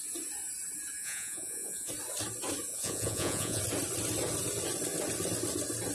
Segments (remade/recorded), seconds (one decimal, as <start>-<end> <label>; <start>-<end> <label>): 0.0-1.0 recorded; 1.0-1.9 remade; 1.9-2.7 recorded; 2.7-3.6 remade; 3.6-5.9 recorded